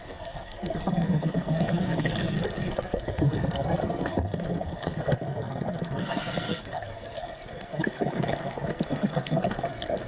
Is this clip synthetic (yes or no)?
yes